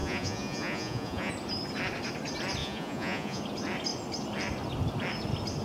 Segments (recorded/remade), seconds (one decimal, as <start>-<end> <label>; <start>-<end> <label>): 0.0-1.3 remade; 1.3-2.6 recorded; 2.6-3.4 remade; 3.4-5.6 recorded